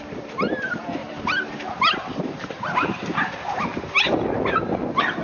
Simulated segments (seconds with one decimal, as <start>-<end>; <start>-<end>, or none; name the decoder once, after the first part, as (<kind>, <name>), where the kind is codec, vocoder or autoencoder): 1.0-4.1 (vocoder, BigVGAN v2)